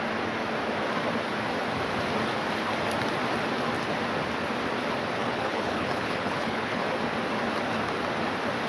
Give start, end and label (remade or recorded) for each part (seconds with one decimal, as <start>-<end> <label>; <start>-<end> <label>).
0.0-5.2 recorded; 5.2-6.8 remade; 6.8-8.7 recorded